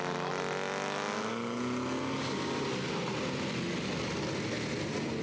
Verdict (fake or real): real